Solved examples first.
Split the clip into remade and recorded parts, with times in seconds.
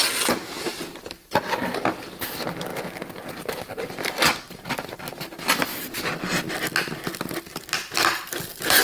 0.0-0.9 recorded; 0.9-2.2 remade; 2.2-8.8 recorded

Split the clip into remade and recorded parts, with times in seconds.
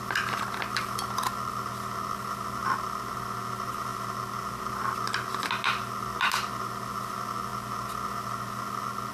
0.0-9.1 recorded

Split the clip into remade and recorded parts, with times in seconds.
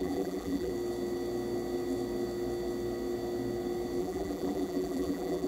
0.0-0.7 remade; 0.7-4.0 recorded; 4.0-5.5 remade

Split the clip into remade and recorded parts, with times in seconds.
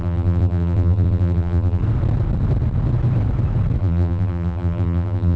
0.0-1.8 remade; 1.8-3.8 recorded; 3.8-5.4 remade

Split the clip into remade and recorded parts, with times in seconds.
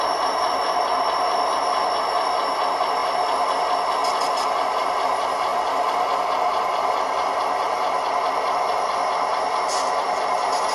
0.0-4.0 recorded; 4.0-4.7 remade; 4.7-5.5 recorded; 5.5-8.2 remade; 8.2-10.7 recorded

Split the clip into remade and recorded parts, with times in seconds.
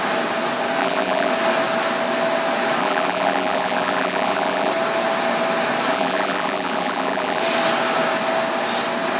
0.0-0.8 recorded; 0.8-1.3 remade; 1.3-2.8 recorded; 2.8-4.7 remade; 4.7-5.9 recorded; 5.9-7.4 remade; 7.4-9.2 recorded